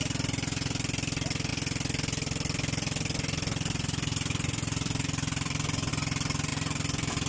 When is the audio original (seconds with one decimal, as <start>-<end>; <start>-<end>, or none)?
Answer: 0.0-1.5; 5.9-6.5